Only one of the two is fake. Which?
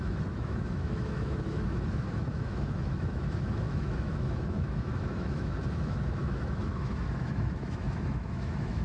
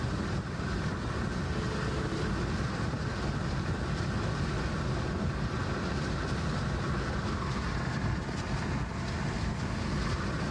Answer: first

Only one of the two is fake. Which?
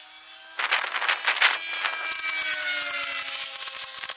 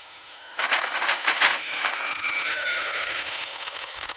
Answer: second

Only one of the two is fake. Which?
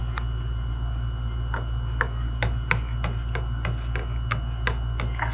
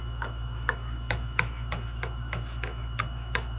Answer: second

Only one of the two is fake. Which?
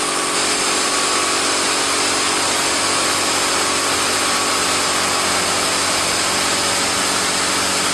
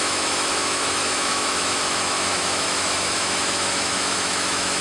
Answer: second